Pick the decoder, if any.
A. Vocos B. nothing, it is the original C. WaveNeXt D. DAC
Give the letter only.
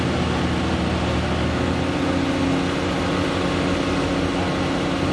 B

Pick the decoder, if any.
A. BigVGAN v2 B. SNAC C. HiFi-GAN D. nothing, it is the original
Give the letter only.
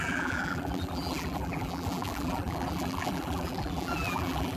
A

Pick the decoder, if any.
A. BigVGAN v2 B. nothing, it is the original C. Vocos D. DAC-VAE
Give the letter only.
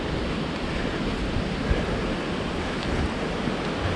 B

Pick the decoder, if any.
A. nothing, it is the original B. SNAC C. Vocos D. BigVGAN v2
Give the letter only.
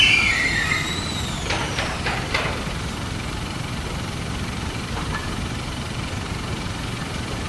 D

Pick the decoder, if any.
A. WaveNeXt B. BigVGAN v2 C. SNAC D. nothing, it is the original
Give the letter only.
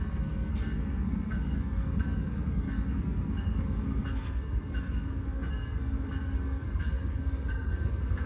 C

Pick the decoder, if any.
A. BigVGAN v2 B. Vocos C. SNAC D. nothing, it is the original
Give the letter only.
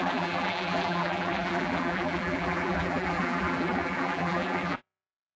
A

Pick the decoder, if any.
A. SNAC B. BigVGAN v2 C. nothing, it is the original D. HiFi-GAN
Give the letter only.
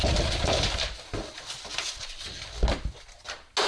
C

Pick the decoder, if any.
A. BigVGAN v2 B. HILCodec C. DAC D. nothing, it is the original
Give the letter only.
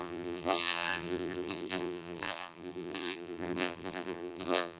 A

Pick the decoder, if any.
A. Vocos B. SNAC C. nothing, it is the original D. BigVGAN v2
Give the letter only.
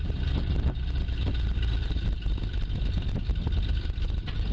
C